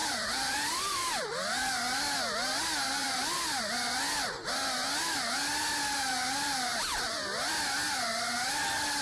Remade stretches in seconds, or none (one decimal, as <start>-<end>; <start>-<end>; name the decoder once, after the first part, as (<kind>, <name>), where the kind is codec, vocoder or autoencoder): 0.0-1.3 (vocoder, BigVGAN v2); 3.0-3.7